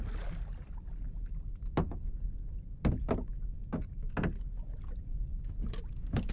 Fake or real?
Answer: real